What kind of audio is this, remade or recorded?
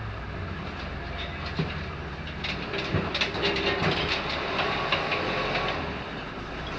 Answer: recorded